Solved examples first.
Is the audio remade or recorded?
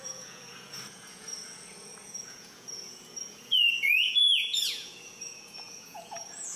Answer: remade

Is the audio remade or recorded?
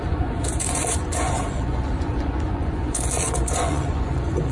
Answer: remade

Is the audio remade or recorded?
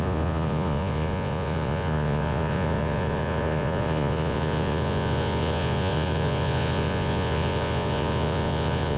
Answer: remade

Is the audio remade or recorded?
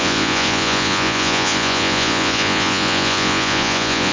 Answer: remade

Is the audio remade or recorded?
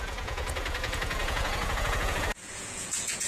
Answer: remade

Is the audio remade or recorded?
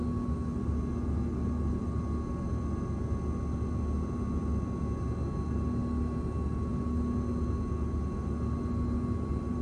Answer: recorded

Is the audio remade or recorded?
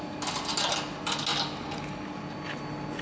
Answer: recorded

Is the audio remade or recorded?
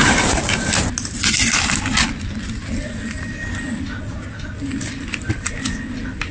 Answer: recorded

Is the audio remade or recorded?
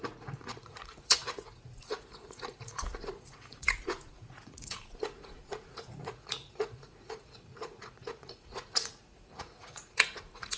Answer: remade